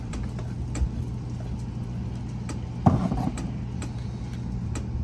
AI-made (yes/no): no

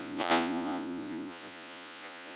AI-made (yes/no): yes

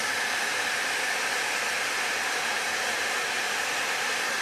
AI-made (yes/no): no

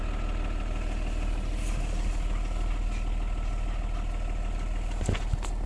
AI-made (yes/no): no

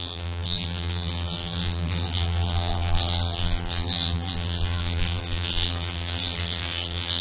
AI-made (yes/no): yes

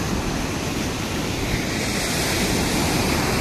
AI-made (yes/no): no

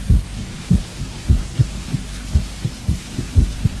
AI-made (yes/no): yes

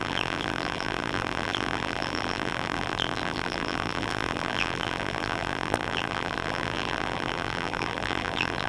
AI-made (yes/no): yes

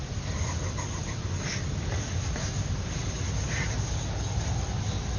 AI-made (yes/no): no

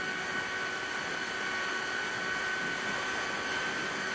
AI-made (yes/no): no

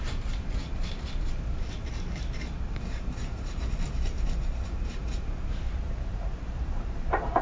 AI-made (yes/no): yes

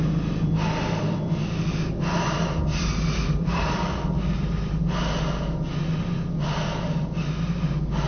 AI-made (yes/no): no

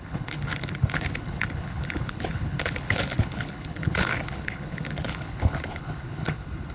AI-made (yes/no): yes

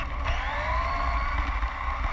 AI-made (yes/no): no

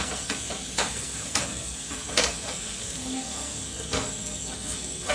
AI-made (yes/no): yes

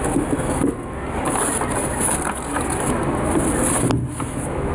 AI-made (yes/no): no